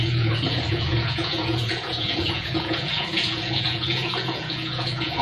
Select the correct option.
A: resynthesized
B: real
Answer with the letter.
A